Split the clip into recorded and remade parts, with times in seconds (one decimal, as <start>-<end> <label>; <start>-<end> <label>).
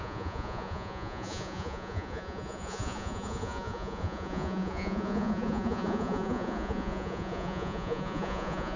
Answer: 0.0-8.8 remade